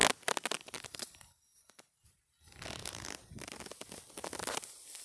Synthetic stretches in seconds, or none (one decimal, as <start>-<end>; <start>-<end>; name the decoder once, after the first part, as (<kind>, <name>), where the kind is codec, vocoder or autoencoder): none